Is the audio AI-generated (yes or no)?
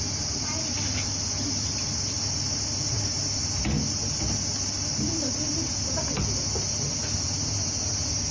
no